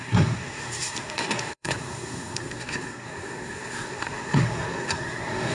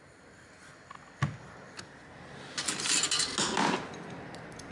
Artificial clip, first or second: first